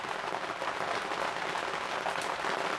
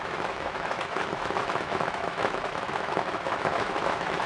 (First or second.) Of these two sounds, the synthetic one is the second